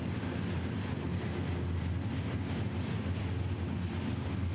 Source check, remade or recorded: recorded